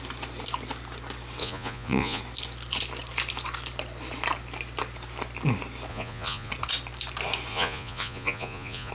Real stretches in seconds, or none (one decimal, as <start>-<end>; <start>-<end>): 0.0-1.4; 2.2-5.9; 6.5-7.5